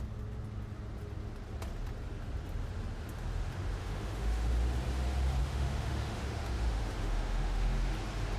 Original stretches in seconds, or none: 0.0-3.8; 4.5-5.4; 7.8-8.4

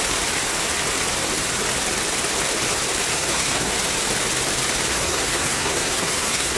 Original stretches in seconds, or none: 0.0-3.1; 3.7-4.9

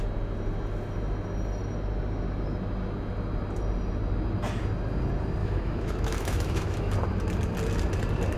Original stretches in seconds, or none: 0.0-5.4; 6.9-8.4

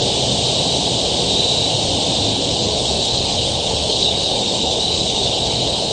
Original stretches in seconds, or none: 0.0-2.3

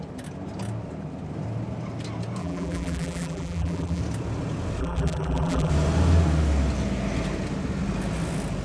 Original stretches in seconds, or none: 0.0-2.4; 4.0-4.8; 5.7-8.6

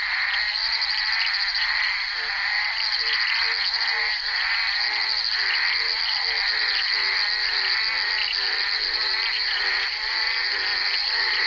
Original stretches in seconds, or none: 0.0-0.6; 1.9-11.5

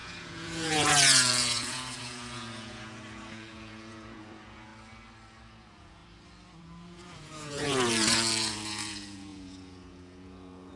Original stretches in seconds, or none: 4.7-5.5; 6.0-6.6